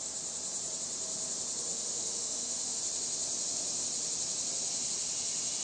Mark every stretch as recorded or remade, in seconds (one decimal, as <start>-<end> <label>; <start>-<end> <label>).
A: 0.0-1.7 recorded; 1.7-2.8 remade; 2.8-5.6 recorded